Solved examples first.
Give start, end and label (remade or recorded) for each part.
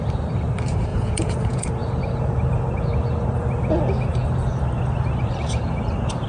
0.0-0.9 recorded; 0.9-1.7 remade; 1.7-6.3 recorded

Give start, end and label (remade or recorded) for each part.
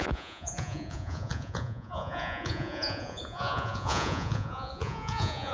0.0-5.5 remade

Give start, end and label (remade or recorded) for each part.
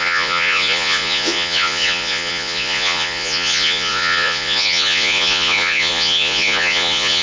0.0-7.2 remade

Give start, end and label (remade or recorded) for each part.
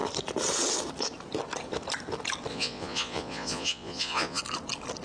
0.0-2.5 recorded; 2.5-4.4 remade; 4.4-5.0 recorded